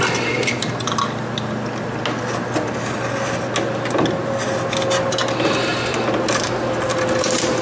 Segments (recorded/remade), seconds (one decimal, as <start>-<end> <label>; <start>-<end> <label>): 0.0-7.6 recorded